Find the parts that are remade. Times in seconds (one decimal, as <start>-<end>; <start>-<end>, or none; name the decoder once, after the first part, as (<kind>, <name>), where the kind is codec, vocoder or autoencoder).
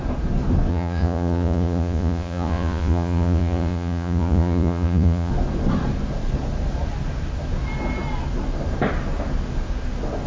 0.7-5.3 (vocoder, Vocos)